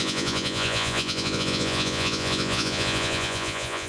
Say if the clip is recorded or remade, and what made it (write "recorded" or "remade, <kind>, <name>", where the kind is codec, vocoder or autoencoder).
remade, vocoder, Vocos